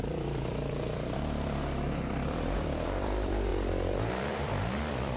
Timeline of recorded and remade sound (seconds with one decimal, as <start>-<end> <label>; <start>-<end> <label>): 0.0-3.5 remade; 3.5-4.3 recorded; 4.3-5.2 remade